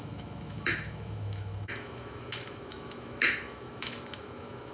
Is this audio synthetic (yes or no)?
yes